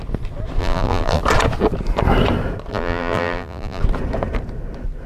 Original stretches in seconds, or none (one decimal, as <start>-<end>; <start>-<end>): 0.0-0.6; 1.2-2.7; 3.8-5.1